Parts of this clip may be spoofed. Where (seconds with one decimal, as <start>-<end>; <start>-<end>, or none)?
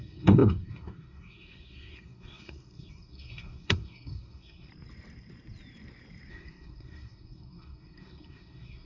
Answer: 0.0-4.7; 6.3-8.9